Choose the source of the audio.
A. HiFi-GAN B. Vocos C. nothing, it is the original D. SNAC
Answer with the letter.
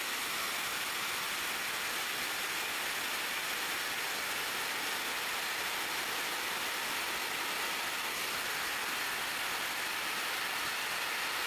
C